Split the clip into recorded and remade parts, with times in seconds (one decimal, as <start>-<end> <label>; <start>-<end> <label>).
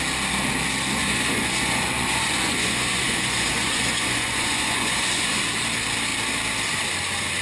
0.0-1.0 recorded; 1.0-5.4 remade; 5.4-7.4 recorded